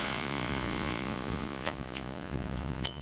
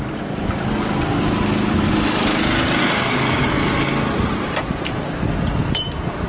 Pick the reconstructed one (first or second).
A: first